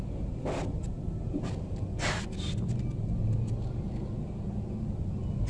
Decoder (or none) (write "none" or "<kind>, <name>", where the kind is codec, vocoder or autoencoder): none